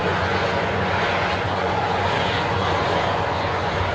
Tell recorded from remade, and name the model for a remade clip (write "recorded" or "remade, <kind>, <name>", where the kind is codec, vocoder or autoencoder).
remade, vocoder, Vocos